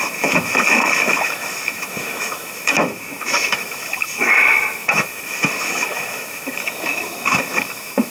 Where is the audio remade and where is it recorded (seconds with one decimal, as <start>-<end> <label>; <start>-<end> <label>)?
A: 0.0-8.1 remade